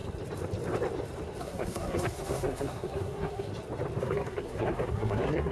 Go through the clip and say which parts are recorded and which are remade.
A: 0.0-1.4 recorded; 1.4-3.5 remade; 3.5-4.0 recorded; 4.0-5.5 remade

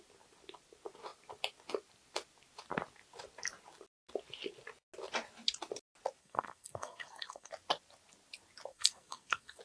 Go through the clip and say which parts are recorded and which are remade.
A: 0.0-6.2 recorded; 6.2-7.5 remade; 7.5-8.7 recorded; 8.7-9.6 remade

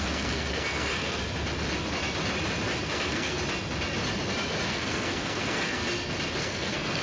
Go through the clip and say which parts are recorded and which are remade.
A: 0.0-1.2 remade; 1.2-2.8 recorded; 2.8-3.4 remade; 3.4-4.7 recorded; 4.7-5.8 remade; 5.8-6.4 recorded; 6.4-7.0 remade